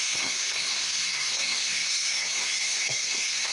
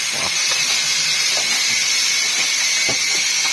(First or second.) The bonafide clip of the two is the second